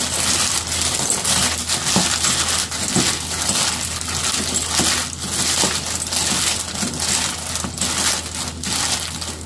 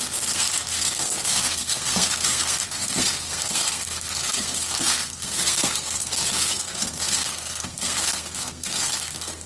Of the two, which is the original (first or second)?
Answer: first